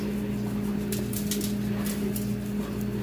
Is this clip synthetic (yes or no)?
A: no